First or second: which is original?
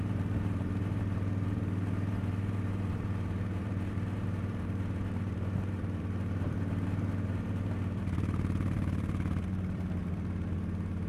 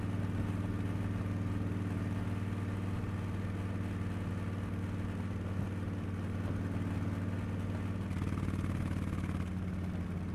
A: second